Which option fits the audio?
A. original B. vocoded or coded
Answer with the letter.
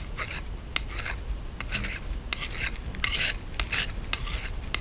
A